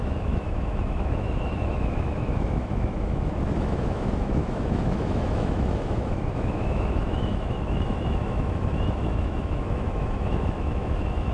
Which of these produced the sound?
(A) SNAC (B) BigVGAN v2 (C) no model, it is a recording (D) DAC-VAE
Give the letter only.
D